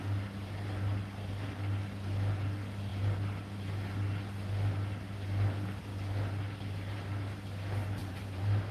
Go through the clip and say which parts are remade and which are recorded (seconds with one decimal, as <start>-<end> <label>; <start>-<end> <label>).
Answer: 0.0-8.0 recorded; 8.0-8.7 remade